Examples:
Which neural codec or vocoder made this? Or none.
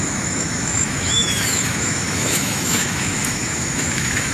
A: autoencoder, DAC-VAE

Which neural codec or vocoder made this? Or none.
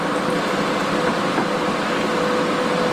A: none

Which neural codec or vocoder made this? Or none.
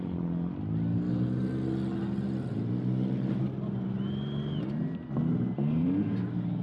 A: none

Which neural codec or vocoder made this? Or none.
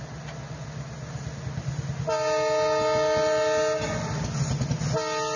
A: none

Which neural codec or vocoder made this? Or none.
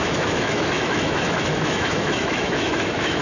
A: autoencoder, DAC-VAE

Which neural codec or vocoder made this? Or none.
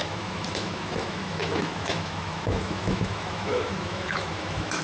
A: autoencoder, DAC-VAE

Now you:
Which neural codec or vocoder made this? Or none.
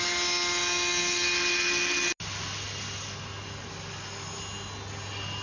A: none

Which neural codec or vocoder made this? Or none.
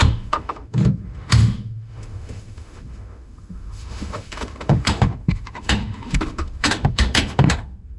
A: autoencoder, DAC-VAE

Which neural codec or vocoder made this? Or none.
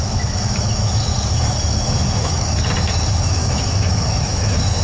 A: autoencoder, DAC-VAE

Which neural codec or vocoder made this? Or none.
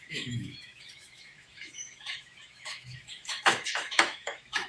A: autoencoder, DAC-VAE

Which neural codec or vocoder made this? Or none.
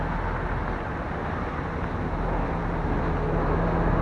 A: none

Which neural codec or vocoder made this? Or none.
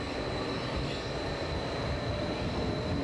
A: none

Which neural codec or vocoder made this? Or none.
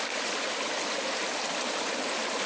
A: none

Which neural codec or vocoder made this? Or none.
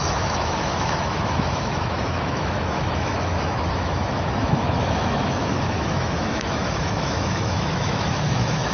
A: autoencoder, DAC-VAE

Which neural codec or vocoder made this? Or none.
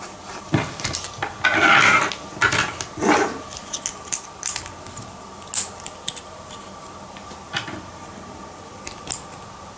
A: none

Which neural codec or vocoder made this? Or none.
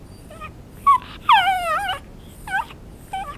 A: none